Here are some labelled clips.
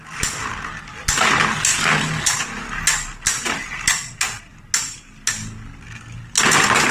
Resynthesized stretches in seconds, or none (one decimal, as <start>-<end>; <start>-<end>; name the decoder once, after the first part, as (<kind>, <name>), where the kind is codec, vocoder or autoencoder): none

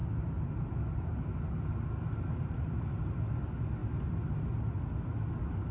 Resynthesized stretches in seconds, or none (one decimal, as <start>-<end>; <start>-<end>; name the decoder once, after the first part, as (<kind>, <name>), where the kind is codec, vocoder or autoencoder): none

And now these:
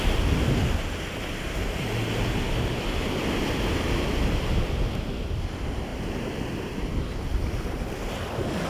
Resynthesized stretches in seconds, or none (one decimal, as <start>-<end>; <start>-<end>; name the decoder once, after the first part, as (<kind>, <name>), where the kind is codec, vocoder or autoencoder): 5.9-7.5 (vocoder, BigVGAN v2)

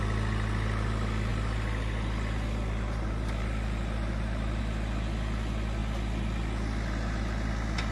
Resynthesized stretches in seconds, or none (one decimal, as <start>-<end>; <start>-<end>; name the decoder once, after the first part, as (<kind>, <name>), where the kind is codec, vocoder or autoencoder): 1.3-4.6 (vocoder, BigVGAN v2)